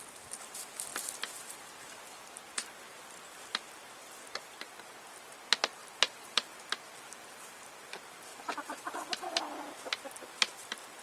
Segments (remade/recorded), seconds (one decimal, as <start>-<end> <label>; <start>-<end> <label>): 0.0-5.8 recorded; 5.8-7.9 remade; 7.9-8.3 recorded; 8.3-9.4 remade; 9.4-11.0 recorded